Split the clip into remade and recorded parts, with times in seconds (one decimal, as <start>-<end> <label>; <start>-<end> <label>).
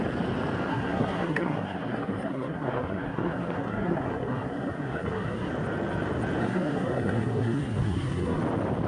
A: 0.0-0.7 recorded; 0.7-5.5 remade; 5.5-6.4 recorded; 6.4-8.4 remade; 8.4-8.9 recorded